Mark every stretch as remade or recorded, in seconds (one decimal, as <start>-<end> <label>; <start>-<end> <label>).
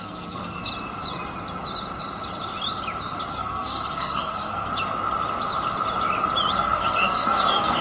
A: 0.0-0.7 remade; 0.7-3.3 recorded; 3.3-4.7 remade; 4.7-6.5 recorded; 6.5-7.8 remade